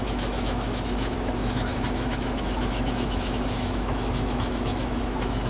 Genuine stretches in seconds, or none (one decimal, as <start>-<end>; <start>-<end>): none